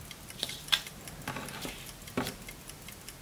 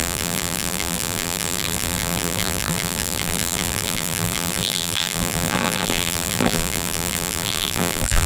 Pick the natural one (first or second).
first